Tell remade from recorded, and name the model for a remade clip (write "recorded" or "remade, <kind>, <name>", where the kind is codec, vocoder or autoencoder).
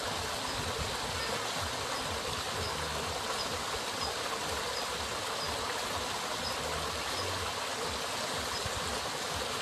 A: recorded